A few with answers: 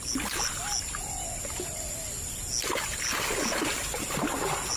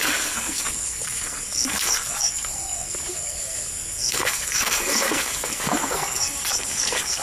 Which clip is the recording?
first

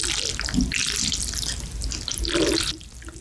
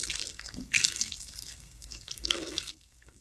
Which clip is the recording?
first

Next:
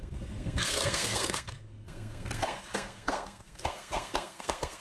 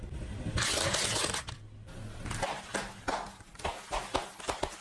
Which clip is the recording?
second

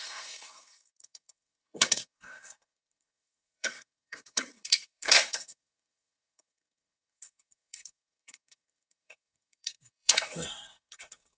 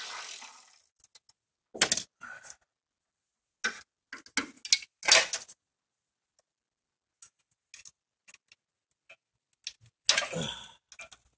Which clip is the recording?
second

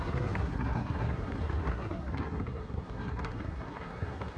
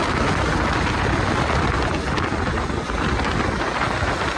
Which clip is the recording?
second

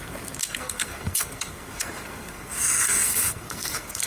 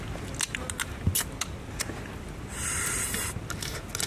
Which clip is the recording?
second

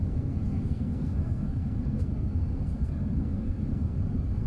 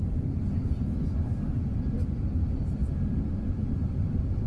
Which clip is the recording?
second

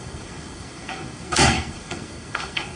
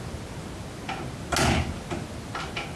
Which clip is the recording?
second